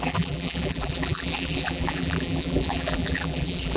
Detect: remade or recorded remade